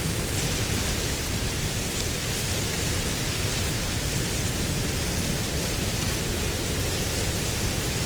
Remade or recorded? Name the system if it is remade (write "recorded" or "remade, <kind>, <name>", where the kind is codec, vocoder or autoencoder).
recorded